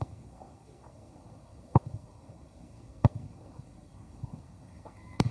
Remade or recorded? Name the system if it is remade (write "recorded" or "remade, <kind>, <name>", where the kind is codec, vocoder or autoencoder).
remade, codec, SNAC